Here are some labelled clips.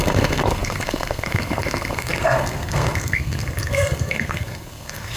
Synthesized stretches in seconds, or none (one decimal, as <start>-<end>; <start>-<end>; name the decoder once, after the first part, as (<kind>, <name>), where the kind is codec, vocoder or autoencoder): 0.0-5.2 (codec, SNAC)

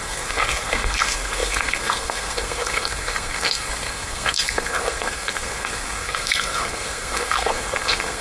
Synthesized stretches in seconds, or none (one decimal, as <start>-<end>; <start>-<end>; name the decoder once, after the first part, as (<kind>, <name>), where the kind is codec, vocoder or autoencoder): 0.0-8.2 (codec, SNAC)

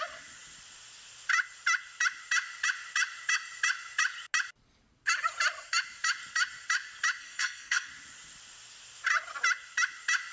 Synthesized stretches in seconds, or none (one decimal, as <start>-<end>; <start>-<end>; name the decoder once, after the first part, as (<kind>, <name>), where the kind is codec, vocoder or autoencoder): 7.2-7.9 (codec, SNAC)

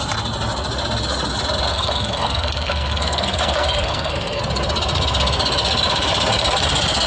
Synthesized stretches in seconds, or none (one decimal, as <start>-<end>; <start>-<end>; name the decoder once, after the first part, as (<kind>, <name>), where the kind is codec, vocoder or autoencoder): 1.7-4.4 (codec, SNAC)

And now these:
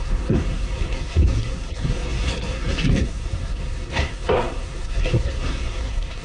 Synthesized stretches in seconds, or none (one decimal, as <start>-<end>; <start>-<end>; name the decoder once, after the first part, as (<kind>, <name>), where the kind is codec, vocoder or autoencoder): 0.0-6.2 (codec, SNAC)

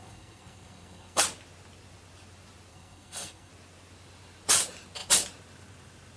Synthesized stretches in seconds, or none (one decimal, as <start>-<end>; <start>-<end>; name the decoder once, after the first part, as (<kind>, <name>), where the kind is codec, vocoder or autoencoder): 0.0-1.2 (codec, SNAC); 2.7-3.5

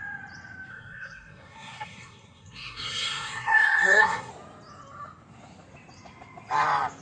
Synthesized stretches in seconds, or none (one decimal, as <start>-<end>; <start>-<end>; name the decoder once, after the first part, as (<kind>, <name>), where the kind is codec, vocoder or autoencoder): 0.7-4.3 (codec, SNAC)